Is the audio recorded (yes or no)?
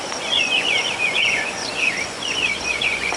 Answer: no